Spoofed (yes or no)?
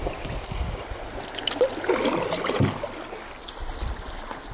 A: no